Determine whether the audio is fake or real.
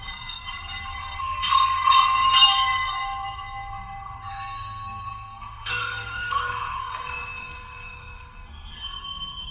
fake